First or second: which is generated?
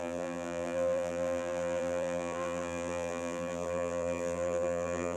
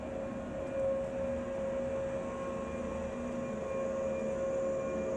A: first